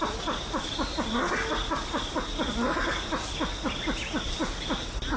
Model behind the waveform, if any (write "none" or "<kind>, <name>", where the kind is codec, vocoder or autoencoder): none